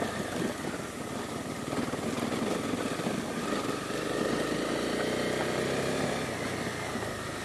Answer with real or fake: real